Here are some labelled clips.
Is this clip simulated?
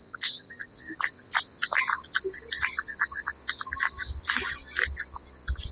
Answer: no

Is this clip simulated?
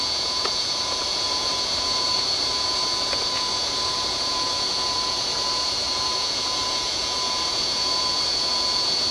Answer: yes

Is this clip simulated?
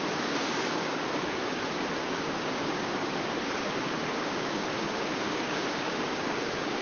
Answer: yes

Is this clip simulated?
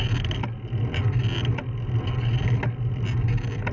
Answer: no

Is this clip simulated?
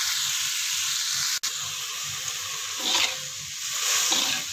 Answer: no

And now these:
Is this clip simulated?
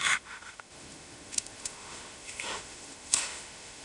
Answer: yes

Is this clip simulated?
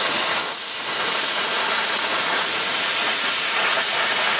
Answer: yes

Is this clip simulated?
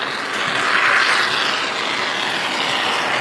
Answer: no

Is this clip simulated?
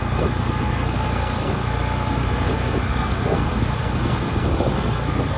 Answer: yes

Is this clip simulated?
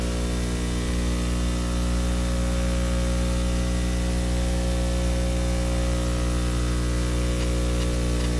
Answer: no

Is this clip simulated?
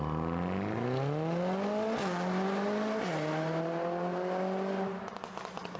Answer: no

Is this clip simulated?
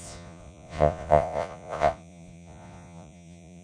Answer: yes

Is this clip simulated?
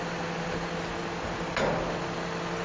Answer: no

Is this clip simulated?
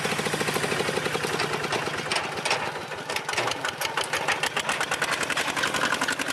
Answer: no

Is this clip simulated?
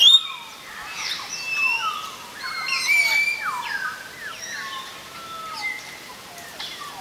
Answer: no